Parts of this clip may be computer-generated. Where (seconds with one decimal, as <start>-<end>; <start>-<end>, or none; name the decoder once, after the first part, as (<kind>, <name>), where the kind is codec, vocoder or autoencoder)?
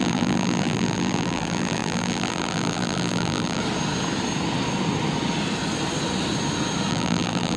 0.0-3.6 (vocoder, BigVGAN v2); 6.9-7.6